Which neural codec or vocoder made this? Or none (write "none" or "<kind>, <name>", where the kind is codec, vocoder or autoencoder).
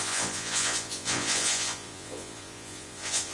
vocoder, Vocos